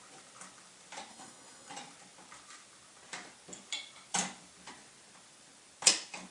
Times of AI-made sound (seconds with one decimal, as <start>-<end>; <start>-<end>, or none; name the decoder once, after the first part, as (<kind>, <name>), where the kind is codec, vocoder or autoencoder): 1.1-1.7 (codec, SNAC)